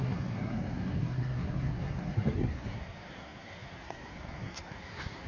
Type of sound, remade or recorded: remade